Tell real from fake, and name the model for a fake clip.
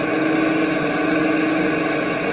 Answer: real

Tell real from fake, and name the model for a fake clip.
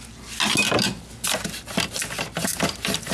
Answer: real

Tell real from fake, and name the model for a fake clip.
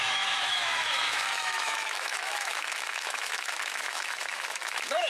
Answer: fake, autoencoder, DAC-VAE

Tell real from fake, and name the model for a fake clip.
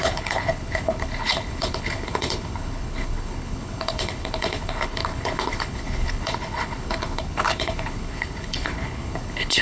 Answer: fake, codec, HILCodec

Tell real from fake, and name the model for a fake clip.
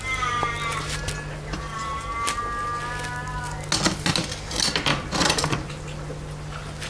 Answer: real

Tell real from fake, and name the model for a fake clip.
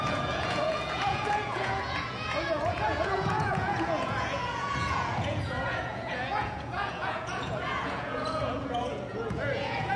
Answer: fake, vocoder, Vocos